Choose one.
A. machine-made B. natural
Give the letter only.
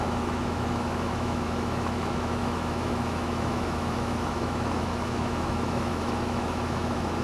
A